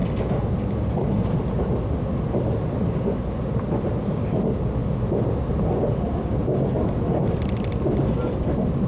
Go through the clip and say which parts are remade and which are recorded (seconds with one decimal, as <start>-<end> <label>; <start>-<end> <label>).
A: 0.0-8.9 recorded